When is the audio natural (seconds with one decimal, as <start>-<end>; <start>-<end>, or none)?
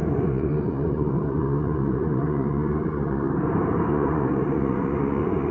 3.3-3.9